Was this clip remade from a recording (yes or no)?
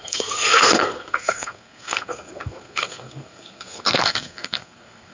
yes